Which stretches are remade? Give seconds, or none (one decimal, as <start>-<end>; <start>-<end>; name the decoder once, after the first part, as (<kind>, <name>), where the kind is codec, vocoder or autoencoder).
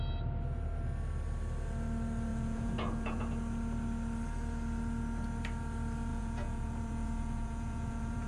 2.3-3.2 (vocoder, Vocos); 6.1-8.3